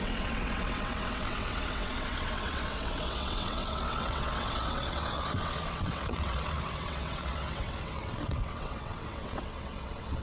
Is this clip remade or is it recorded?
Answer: remade